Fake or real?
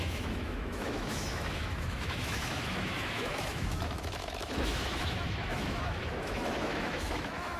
fake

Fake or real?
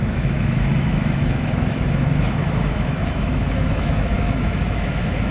fake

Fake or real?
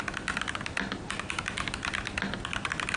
real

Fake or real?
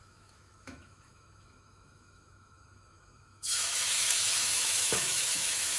fake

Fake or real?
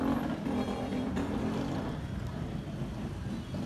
real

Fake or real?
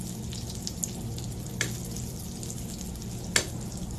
real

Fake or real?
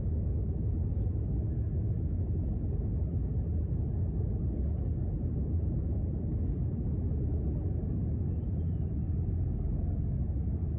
real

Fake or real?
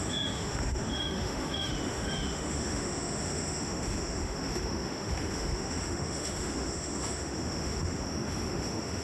fake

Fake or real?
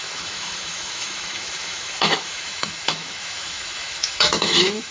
fake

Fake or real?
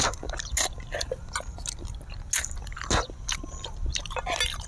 real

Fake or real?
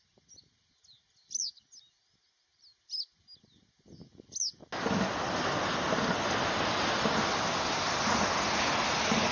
real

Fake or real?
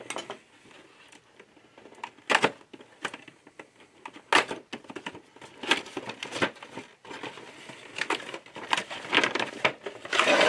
real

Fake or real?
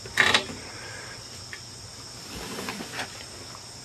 real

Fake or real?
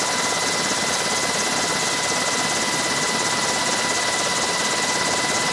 real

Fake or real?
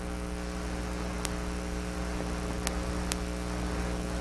real